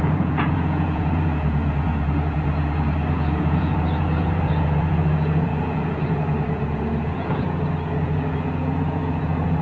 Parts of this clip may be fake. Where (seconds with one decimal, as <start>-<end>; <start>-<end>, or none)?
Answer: 0.0-9.6